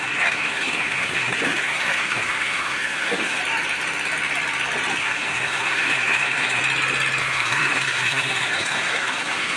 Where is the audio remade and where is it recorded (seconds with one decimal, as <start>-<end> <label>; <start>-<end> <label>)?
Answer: 0.0-3.4 remade; 3.4-5.0 recorded; 5.0-6.6 remade; 6.6-7.2 recorded; 7.2-9.6 remade